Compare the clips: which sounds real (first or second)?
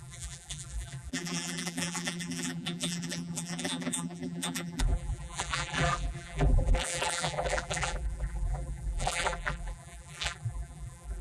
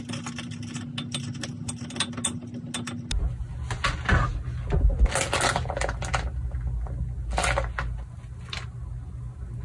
second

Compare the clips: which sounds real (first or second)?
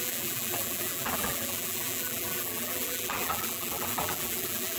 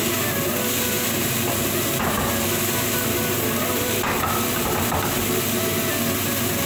second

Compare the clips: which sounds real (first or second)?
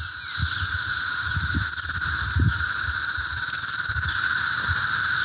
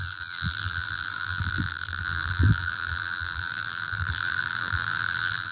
first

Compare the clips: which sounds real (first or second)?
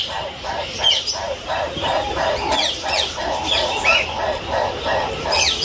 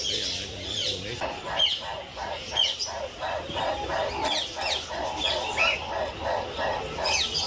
second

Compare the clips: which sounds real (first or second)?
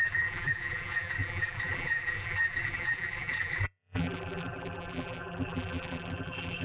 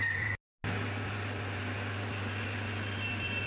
second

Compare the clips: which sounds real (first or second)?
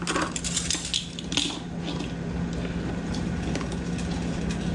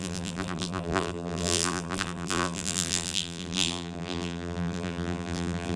first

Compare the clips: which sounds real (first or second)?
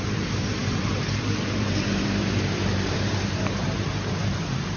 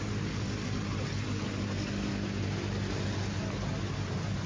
second